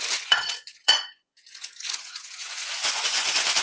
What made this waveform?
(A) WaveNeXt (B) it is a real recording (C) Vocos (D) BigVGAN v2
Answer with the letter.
C